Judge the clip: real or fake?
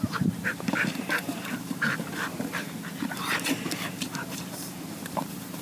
fake